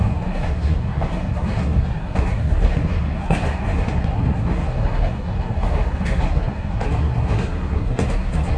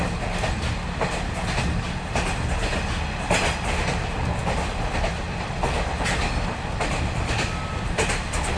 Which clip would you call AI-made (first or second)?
first